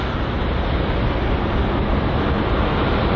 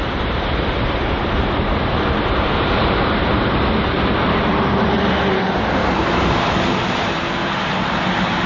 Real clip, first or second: first